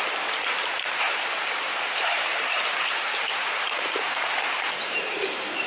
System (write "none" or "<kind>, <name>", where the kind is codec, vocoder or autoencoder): vocoder, BigVGAN v2